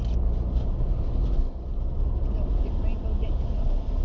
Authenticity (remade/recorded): recorded